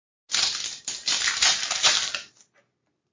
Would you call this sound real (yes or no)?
yes